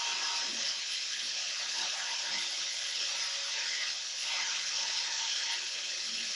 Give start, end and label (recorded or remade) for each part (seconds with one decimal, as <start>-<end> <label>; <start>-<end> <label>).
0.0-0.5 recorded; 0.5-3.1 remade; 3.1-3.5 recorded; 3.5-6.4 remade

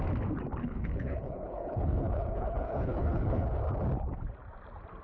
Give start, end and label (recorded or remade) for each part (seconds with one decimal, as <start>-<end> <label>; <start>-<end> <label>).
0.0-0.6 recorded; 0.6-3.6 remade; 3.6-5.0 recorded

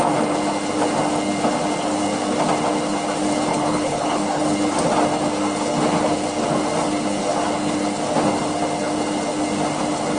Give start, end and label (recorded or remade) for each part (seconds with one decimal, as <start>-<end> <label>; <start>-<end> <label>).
0.0-3.5 recorded; 3.5-4.4 remade; 4.4-10.2 recorded

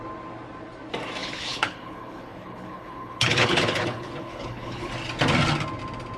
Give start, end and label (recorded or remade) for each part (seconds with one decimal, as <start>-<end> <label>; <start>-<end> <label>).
0.0-1.2 recorded; 1.2-4.9 remade; 4.9-6.2 recorded

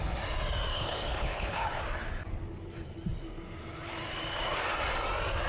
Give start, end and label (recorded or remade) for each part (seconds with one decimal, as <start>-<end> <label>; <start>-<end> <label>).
0.0-0.7 recorded; 0.7-1.8 remade; 1.8-5.5 recorded

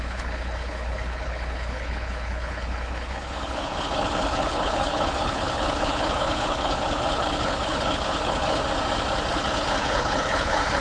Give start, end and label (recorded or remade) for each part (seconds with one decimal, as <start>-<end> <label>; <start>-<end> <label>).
0.0-8.6 remade; 8.6-9.3 recorded; 9.3-10.8 remade